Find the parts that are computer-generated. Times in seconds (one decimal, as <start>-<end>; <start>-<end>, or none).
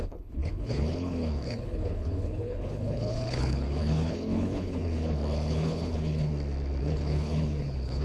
0.0-6.3; 6.8-8.0